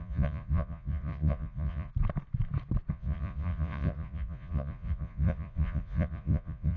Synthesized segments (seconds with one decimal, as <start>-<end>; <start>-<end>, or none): 0.0-1.9; 2.9-6.8